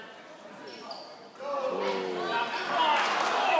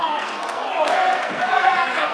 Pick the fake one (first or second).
second